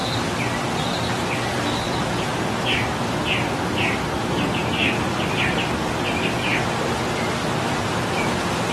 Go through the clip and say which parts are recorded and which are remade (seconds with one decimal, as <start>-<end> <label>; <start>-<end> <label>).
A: 0.0-8.7 recorded